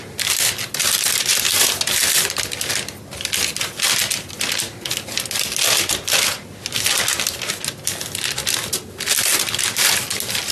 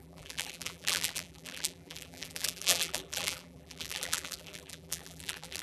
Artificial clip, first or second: second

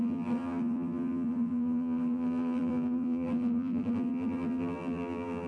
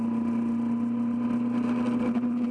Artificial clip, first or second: first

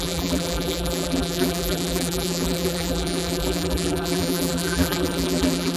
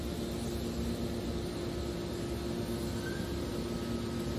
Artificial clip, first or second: first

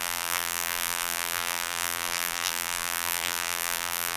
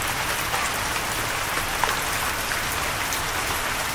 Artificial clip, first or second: first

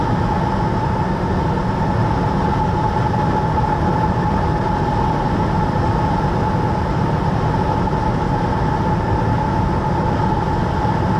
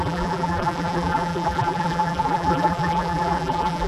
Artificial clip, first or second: second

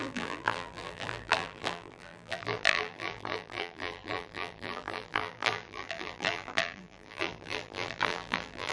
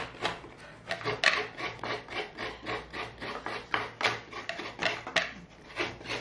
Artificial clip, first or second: first